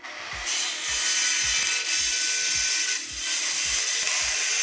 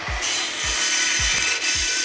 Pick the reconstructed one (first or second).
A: second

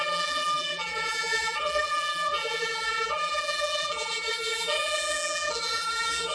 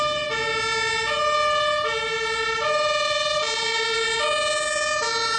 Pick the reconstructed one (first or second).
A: first